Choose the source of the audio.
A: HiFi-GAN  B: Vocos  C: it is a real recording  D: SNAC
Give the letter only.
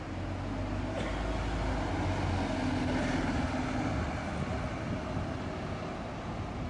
C